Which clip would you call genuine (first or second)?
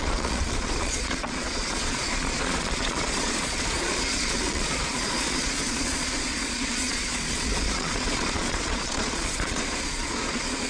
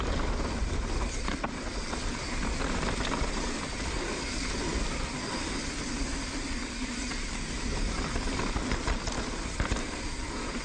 second